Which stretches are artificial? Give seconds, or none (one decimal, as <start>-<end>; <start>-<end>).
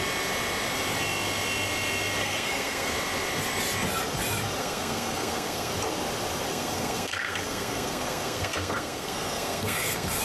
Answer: 2.2-2.9; 4.6-5.7; 6.5-10.2